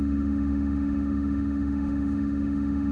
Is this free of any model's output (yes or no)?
no